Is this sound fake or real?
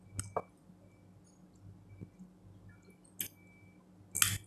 real